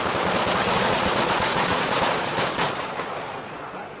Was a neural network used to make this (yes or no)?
yes